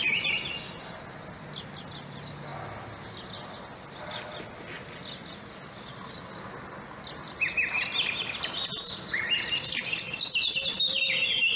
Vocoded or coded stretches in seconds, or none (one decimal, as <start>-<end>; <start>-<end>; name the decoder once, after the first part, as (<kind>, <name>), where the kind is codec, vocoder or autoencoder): none

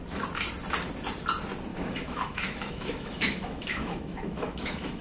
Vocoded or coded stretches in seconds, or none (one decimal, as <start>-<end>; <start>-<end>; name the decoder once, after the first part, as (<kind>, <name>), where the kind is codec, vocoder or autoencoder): 1.7-5.0 (autoencoder, DAC-VAE)

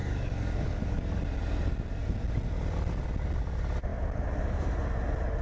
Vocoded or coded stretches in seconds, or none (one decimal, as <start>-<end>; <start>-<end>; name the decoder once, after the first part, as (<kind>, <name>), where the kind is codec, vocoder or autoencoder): 0.0-1.0 (codec, DAC)

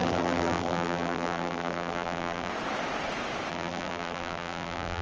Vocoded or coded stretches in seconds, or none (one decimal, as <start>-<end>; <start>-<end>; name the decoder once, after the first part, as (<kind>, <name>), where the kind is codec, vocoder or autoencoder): 0.0-2.5 (vocoder, BigVGAN v2); 3.5-5.0

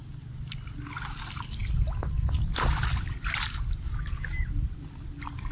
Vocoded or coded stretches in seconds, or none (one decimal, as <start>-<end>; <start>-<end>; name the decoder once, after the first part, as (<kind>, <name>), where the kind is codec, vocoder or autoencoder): none